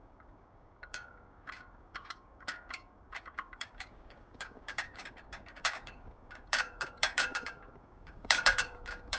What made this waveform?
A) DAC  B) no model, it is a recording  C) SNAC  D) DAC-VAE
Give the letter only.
A